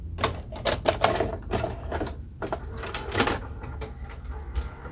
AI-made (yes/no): no